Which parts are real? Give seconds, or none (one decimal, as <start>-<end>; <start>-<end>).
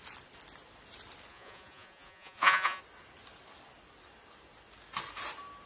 0.0-1.3; 2.8-5.7